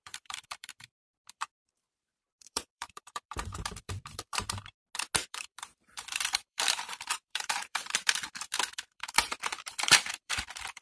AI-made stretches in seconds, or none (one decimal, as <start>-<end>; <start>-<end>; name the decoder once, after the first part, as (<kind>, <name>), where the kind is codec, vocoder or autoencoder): 0.0-4.8 (vocoder, BigVGAN v2); 5.3-10.8